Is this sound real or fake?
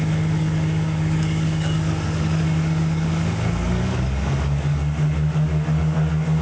fake